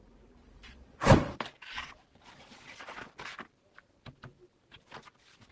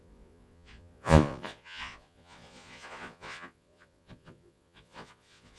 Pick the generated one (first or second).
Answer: second